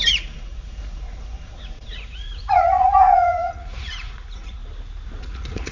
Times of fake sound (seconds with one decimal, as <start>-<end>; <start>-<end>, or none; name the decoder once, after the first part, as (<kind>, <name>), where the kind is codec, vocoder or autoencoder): 0.0-4.6 (vocoder, Vocos); 5.2-5.7